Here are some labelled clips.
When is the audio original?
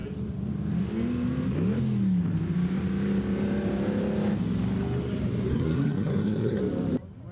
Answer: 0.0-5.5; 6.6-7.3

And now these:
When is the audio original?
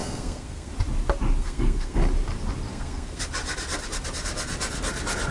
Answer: 0.7-1.4; 2.0-2.7; 3.2-5.3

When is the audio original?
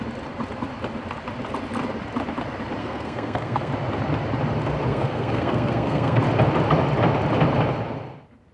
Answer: 0.0-2.8; 3.7-4.9; 6.2-8.5